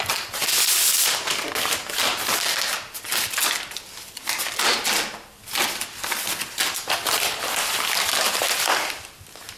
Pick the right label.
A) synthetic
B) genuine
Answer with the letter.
B